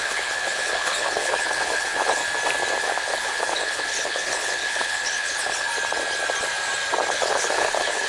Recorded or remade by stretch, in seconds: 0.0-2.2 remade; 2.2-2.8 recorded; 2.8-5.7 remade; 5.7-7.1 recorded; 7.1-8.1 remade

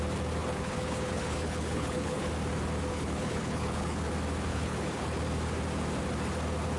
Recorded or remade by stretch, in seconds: 0.0-0.4 recorded; 0.4-2.3 remade; 2.3-2.9 recorded; 2.9-4.1 remade; 4.1-4.5 recorded; 4.5-5.2 remade; 5.2-6.8 recorded

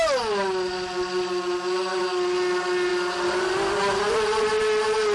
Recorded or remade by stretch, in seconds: 0.0-5.1 recorded

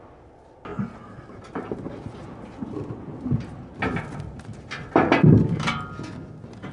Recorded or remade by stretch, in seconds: 0.0-6.7 recorded

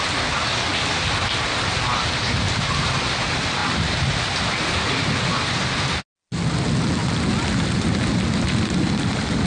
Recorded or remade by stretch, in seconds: 0.0-9.5 recorded

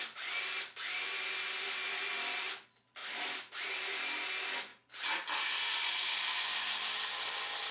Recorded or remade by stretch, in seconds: 0.0-7.7 recorded